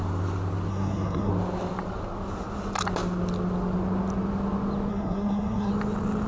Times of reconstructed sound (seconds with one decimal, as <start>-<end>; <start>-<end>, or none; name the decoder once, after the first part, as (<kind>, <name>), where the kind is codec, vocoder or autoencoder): 0.7-1.3 (codec, SNAC); 4.9-5.7